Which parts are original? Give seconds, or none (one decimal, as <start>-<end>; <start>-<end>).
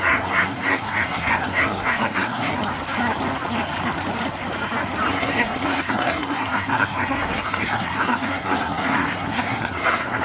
2.5-5.1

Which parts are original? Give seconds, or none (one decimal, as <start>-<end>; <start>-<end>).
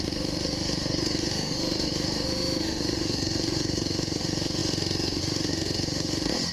none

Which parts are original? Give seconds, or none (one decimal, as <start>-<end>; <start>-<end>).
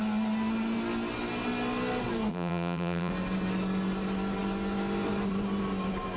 0.0-2.3; 3.1-6.2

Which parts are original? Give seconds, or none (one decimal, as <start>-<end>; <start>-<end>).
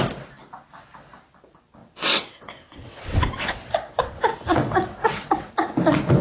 0.0-1.8; 5.5-6.2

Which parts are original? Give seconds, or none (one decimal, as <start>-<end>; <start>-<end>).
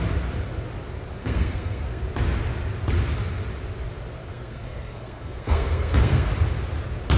0.0-1.2; 2.0-4.3; 6.3-7.2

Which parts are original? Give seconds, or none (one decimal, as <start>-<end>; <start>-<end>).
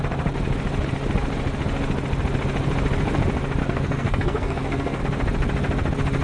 0.0-3.6; 5.0-6.2